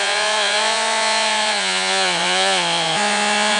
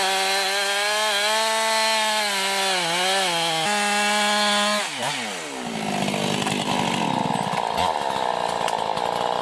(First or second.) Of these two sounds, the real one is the second